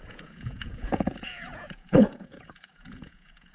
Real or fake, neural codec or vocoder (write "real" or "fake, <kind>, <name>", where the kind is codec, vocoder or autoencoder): fake, vocoder, Vocos